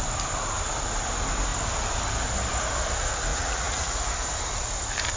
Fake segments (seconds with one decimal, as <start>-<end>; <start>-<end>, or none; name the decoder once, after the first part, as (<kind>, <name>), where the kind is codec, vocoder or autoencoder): 3.3-4.1 (vocoder, Vocos)